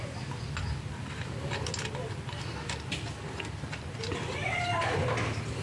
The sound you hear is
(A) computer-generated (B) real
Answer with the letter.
B